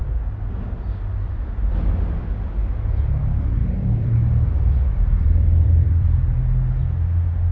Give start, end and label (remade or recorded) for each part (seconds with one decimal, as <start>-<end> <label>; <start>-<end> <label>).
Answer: 0.0-3.6 recorded; 3.6-6.8 remade; 6.8-7.5 recorded

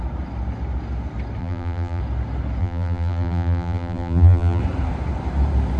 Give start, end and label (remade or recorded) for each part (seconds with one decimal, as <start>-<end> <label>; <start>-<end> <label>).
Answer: 0.0-1.4 recorded; 1.4-2.0 remade; 2.0-2.6 recorded; 2.6-4.6 remade; 4.6-5.8 recorded

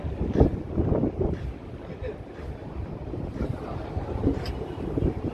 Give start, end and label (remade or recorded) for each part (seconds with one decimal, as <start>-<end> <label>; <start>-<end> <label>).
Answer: 0.0-2.0 recorded; 2.0-5.3 remade

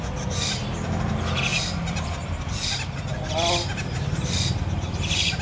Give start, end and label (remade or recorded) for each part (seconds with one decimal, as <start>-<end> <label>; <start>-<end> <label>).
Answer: 0.0-1.5 recorded; 1.5-2.7 remade; 2.7-5.4 recorded

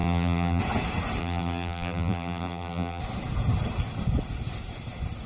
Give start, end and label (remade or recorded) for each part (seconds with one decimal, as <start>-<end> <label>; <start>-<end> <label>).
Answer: 0.0-0.6 remade; 0.6-1.2 recorded; 1.2-3.0 remade; 3.0-5.3 recorded